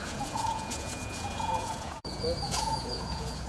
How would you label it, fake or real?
fake